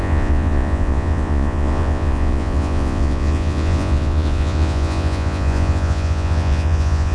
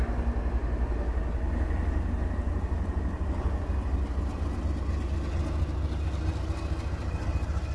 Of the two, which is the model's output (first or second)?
first